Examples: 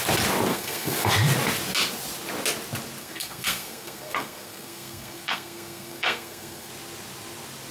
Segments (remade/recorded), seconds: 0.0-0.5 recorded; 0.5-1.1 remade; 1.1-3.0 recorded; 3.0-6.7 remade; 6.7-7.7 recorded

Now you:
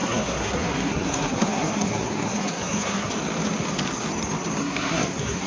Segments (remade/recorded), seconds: 0.0-3.1 remade; 3.1-4.6 recorded; 4.6-5.5 remade

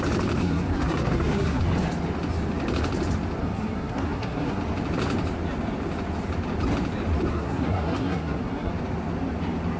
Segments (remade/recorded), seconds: 0.0-0.4 recorded; 0.4-1.6 remade; 1.6-3.4 recorded; 3.4-4.6 remade; 4.6-7.3 recorded; 7.3-8.7 remade; 8.7-9.8 recorded

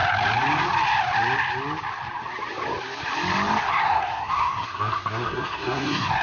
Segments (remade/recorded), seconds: 0.0-3.7 recorded; 3.7-6.2 remade

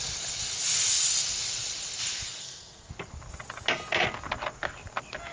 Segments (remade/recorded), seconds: 0.0-2.4 recorded; 2.4-2.9 remade; 2.9-5.3 recorded

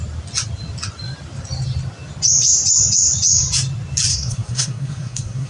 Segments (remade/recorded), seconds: 0.0-4.1 recorded; 4.1-5.5 remade

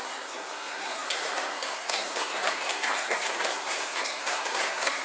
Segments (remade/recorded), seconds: 0.0-5.0 remade